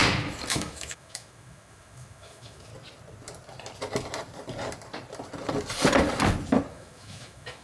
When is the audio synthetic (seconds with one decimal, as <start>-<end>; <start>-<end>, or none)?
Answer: 0.5-2.7; 6.7-7.6